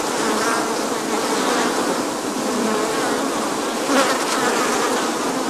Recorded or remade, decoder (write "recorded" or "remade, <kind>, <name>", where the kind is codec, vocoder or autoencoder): remade, vocoder, BigVGAN v2